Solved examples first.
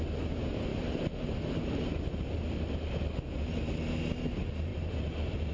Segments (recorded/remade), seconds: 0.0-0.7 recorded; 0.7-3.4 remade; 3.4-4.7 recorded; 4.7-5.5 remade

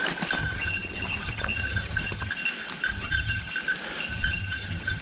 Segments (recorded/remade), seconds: 0.0-0.4 recorded; 0.4-2.3 remade; 2.3-2.9 recorded; 2.9-3.5 remade; 3.5-4.1 recorded; 4.1-5.0 remade

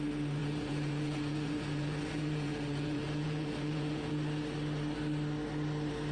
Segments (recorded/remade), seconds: 0.0-0.4 recorded; 0.4-4.1 remade; 4.1-6.1 recorded

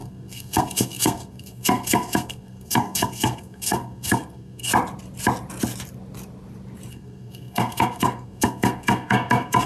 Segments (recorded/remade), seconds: 0.0-4.7 remade; 4.7-6.9 recorded; 6.9-9.7 remade

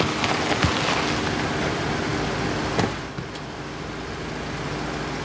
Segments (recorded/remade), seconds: 0.0-5.2 recorded